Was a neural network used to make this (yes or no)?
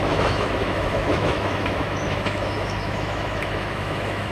yes